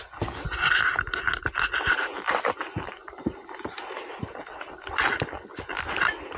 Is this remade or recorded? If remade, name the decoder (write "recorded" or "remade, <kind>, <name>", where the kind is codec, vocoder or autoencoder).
remade, vocoder, BigVGAN v2